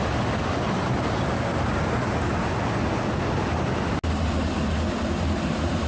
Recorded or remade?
recorded